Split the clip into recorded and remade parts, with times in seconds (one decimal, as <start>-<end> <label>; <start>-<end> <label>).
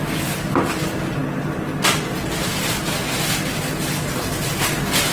0.0-5.1 recorded